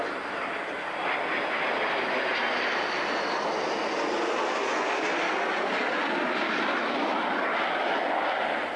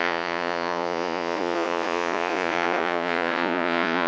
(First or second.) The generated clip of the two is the second